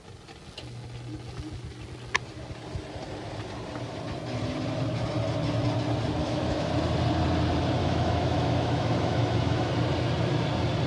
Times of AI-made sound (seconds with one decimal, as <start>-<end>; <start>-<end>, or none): 6.2-6.7; 7.8-9.7